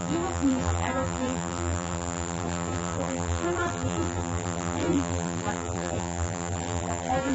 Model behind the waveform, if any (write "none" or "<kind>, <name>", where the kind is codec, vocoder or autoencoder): vocoder, BigVGAN v2